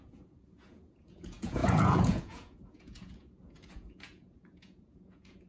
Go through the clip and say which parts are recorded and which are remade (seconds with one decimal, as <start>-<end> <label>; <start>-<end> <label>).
0.0-5.5 remade